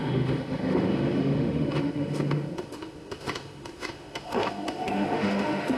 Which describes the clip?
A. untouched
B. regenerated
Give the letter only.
B